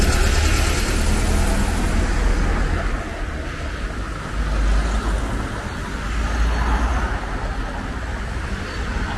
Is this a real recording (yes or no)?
yes